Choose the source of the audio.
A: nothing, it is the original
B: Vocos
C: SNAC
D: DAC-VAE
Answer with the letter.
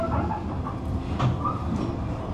A